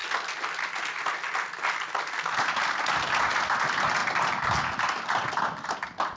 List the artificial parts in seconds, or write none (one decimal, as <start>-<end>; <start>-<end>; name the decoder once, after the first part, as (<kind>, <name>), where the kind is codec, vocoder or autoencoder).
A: none